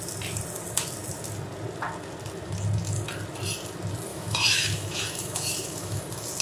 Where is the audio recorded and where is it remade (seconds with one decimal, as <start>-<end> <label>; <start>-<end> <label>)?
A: 0.0-4.1 recorded; 4.1-6.0 remade; 6.0-6.4 recorded